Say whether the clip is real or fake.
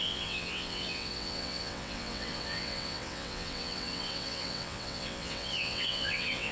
fake